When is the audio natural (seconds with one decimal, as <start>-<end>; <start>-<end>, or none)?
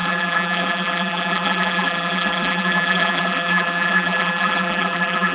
none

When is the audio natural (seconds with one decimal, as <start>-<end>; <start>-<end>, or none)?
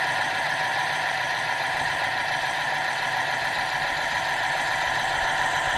0.0-0.7; 1.9-5.8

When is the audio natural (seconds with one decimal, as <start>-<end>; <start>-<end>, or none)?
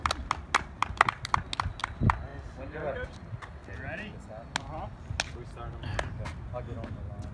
0.0-7.3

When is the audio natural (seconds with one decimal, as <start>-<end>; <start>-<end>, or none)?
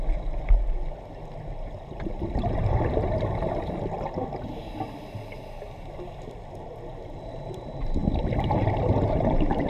0.0-9.7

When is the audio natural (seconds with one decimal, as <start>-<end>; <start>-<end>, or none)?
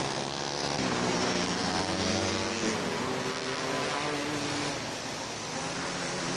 0.0-0.6; 2.3-6.4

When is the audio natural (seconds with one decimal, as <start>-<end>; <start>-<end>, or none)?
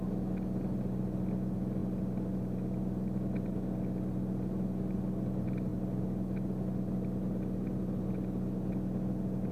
0.0-9.5